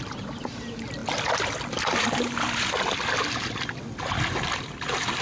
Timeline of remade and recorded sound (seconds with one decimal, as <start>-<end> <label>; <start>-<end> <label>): 0.0-5.2 recorded